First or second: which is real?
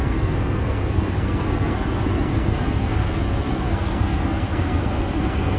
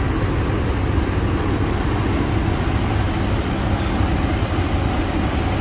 second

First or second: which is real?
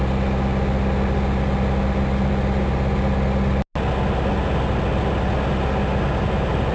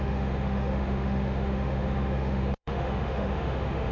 first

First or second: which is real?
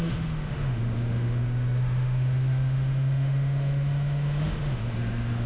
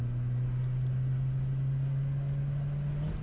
second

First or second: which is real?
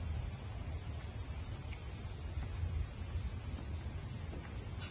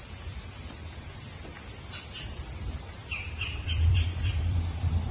first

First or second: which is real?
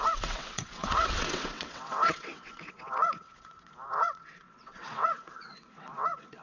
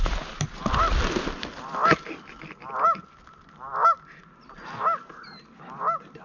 second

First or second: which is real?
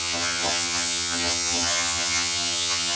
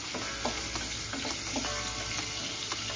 second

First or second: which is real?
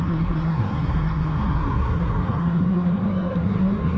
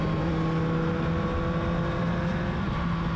second